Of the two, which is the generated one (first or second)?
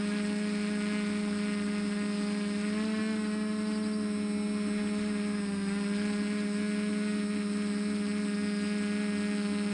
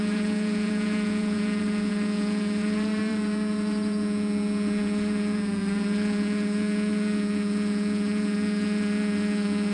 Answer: second